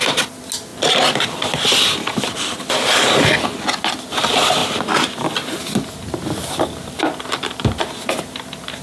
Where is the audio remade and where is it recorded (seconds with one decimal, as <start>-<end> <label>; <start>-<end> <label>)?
0.0-8.8 recorded

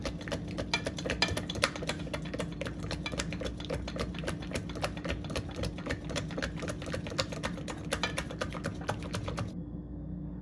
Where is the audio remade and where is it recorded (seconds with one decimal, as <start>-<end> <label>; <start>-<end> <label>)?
0.0-9.5 recorded; 9.5-10.4 remade

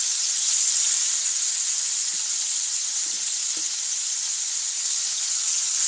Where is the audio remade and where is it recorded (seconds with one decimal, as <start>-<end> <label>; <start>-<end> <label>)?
0.0-5.9 remade

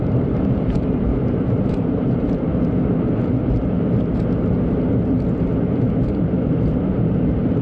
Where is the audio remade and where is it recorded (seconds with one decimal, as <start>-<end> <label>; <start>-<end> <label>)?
0.0-1.1 remade; 1.1-1.7 recorded; 1.7-2.5 remade; 2.5-6.1 recorded; 6.1-7.6 remade

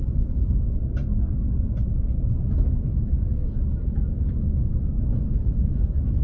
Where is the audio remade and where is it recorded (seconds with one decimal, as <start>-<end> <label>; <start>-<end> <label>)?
0.0-6.2 recorded

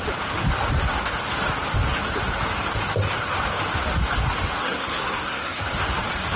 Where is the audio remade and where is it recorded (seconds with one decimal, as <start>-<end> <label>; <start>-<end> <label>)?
0.0-4.6 recorded; 4.6-5.6 remade; 5.6-6.4 recorded

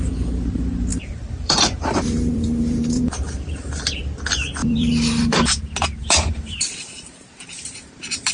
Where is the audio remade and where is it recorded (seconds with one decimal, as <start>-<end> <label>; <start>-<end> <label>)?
0.0-0.9 recorded; 0.9-3.8 remade; 3.8-4.6 recorded; 4.6-5.6 remade; 5.6-6.0 recorded; 6.0-8.3 remade